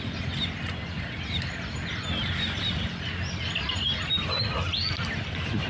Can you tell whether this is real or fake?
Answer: real